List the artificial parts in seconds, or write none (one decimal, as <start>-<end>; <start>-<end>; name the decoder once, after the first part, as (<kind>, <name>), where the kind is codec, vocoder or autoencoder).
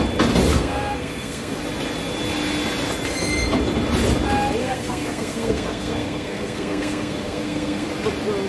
0.5-1.6 (codec, SNAC); 4.6-7.9